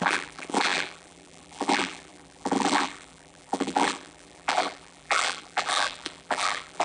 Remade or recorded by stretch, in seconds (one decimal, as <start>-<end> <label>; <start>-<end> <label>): 0.0-6.8 remade